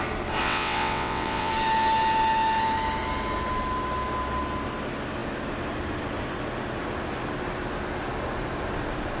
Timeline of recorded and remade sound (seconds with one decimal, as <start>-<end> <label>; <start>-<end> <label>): 0.0-0.4 recorded; 0.4-1.5 remade; 1.5-9.2 recorded